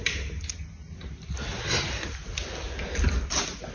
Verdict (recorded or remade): recorded